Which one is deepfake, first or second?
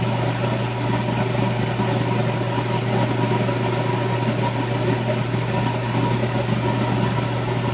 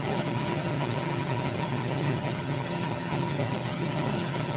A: second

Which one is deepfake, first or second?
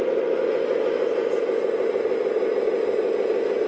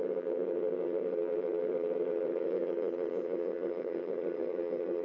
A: second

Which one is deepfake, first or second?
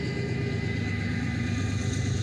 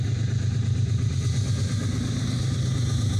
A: second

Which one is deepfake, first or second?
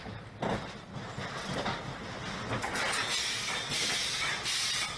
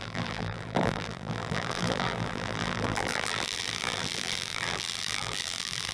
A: second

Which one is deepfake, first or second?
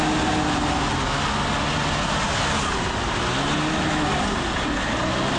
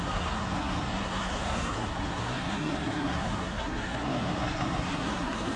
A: second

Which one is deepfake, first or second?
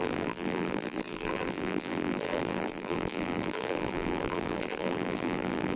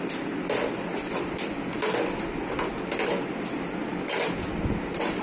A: first